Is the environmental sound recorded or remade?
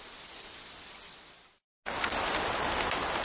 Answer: recorded